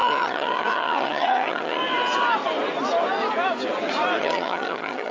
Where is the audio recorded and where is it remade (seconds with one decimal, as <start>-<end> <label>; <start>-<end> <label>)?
0.0-1.8 remade; 1.8-4.2 recorded; 4.2-5.1 remade